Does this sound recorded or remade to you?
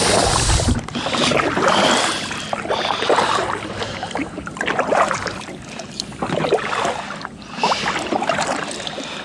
remade